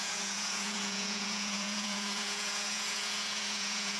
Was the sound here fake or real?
fake